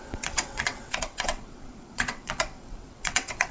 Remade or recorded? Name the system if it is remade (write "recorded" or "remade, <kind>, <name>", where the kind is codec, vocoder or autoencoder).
remade, vocoder, WaveNeXt